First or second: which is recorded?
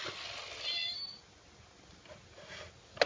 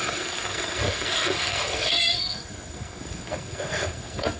first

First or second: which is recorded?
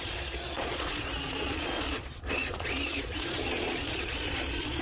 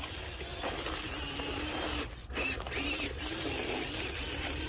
second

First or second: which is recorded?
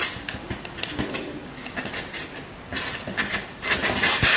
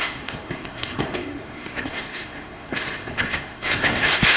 first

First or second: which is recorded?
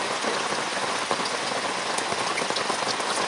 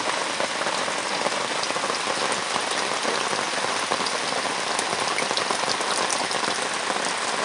second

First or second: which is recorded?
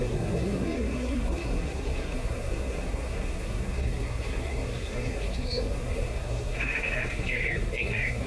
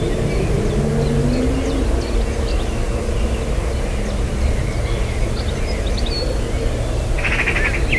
second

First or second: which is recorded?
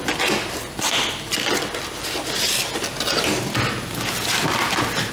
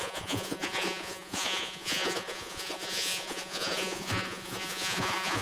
first